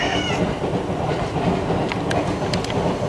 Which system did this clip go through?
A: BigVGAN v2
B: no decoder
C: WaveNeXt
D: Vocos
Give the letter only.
B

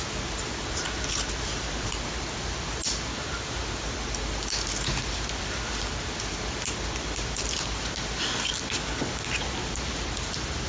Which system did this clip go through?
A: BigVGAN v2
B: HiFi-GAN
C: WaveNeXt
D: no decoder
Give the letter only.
D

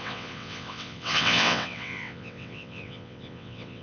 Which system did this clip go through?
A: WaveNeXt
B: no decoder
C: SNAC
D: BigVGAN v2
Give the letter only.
A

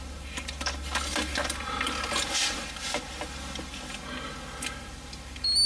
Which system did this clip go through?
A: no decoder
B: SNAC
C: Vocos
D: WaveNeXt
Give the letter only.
A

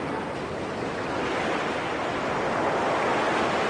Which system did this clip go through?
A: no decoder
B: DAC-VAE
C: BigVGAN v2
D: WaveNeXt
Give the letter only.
A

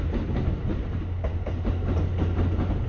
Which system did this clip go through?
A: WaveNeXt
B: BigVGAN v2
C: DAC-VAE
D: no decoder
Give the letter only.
D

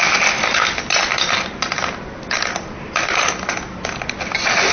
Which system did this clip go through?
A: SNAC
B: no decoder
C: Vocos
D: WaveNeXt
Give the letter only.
B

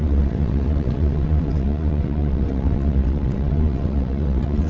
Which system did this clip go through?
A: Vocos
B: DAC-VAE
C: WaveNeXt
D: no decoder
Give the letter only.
C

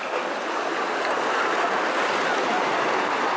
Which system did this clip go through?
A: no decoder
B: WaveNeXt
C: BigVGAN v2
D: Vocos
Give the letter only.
A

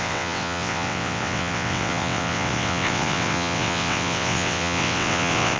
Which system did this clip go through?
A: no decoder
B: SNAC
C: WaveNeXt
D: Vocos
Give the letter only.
C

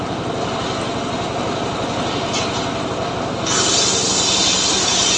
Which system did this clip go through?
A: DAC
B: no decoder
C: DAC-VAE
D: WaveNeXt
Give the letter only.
B